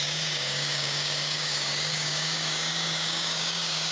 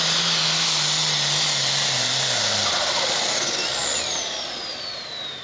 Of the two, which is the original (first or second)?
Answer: second